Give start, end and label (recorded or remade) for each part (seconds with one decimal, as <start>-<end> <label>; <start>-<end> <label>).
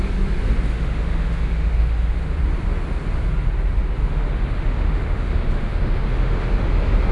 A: 0.0-0.7 recorded; 0.7-2.4 remade; 2.4-4.0 recorded; 4.0-6.6 remade; 6.6-7.1 recorded